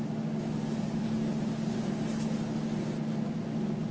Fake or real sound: real